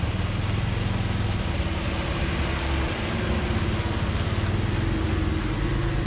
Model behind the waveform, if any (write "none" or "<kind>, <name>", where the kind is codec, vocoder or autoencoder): none